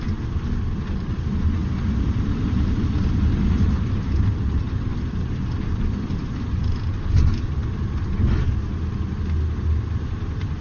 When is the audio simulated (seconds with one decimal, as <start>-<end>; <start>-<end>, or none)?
1.6-6.3